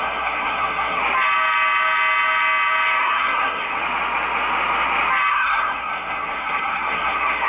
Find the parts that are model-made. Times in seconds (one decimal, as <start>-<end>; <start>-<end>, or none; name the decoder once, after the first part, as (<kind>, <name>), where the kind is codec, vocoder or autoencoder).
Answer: 0.0-1.0 (codec, SNAC); 3.0-3.8; 5.3-7.5